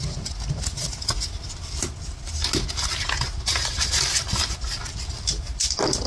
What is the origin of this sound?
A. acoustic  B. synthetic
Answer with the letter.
A